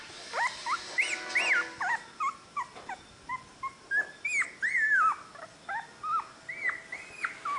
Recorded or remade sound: recorded